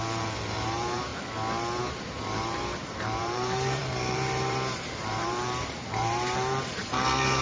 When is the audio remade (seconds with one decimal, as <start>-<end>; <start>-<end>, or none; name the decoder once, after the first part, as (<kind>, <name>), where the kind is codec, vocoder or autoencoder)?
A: 0.0-1.1 (vocoder, BigVGAN v2); 1.8-7.4